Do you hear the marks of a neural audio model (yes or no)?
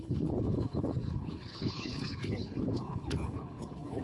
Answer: yes